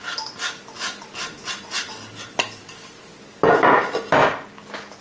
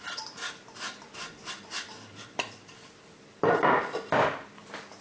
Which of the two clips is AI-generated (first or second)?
second